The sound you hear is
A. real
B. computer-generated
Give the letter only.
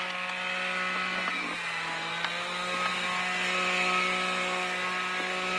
A